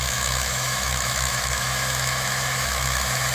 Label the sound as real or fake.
fake